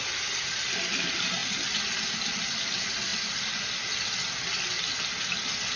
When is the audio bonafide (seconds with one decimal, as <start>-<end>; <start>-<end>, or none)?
0.0-5.8